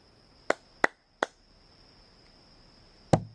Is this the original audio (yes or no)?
yes